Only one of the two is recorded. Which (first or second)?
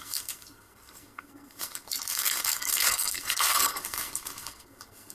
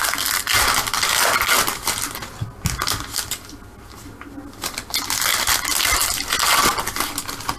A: second